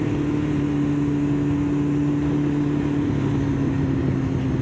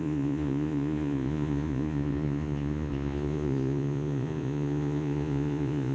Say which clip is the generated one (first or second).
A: second